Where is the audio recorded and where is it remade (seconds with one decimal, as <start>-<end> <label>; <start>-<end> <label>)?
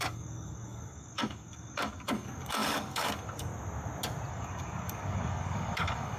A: 0.0-3.5 remade; 3.5-4.3 recorded; 4.3-6.2 remade